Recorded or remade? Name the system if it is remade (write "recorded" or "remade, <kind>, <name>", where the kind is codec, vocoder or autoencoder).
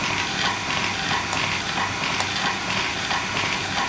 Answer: recorded